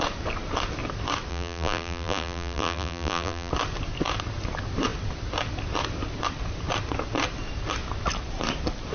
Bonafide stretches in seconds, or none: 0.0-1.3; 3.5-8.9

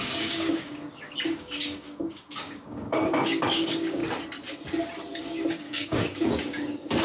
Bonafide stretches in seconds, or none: 4.0-5.2

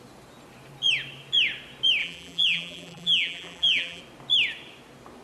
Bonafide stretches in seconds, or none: 0.0-2.0; 4.0-5.2

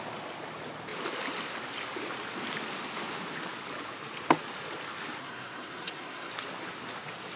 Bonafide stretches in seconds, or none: 0.0-5.2; 6.3-7.4

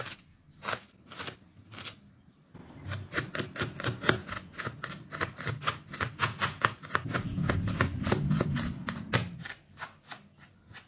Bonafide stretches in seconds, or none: 0.0-4.2; 4.9-6.2; 9.1-10.9

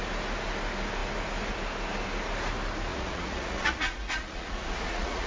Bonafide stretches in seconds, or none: 0.0-2.9